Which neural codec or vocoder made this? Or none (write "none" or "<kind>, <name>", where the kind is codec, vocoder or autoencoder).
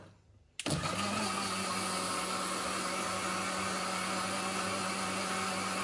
none